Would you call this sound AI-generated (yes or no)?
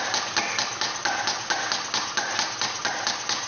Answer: no